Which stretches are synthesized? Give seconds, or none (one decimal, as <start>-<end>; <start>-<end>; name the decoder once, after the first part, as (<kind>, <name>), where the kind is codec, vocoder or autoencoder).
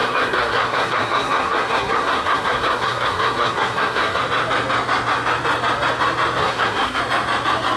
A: 0.0-4.2 (codec, SNAC); 6.4-7.0